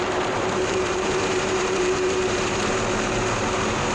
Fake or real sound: fake